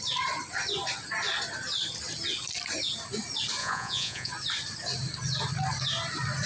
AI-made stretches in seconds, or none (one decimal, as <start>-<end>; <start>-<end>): 3.6-4.3